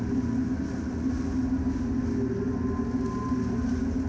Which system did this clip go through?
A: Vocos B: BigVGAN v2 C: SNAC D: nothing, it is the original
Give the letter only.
D